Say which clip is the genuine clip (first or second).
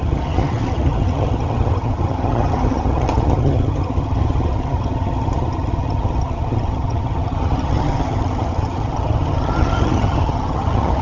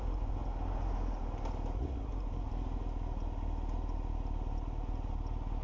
second